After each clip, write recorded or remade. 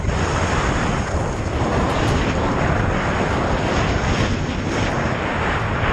recorded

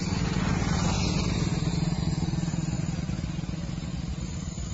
recorded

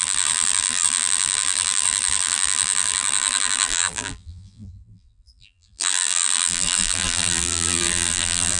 remade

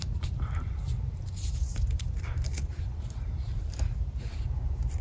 remade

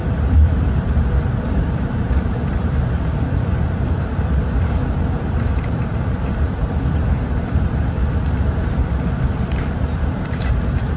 remade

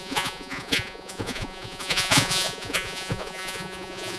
remade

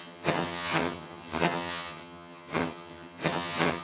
remade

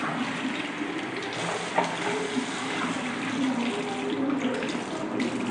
recorded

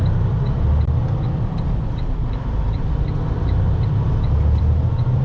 remade